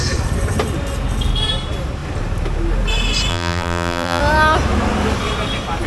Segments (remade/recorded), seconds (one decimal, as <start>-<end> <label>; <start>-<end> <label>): 0.0-3.3 recorded; 3.3-4.2 remade; 4.2-5.9 recorded